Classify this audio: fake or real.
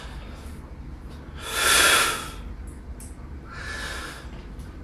real